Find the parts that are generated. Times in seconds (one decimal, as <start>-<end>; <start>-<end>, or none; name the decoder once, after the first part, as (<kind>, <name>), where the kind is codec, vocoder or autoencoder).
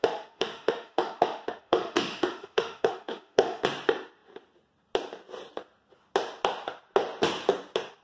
0.0-3.6 (autoencoder, DAC-VAE)